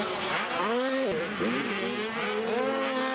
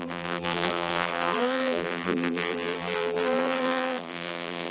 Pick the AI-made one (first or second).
second